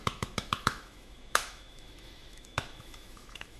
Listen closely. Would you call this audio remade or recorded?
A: remade